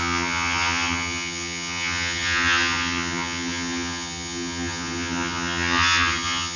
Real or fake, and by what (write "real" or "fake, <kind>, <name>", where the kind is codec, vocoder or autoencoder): fake, vocoder, HiFi-GAN